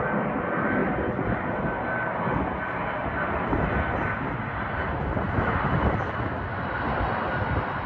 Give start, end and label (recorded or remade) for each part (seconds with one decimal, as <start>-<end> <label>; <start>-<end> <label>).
0.0-7.9 recorded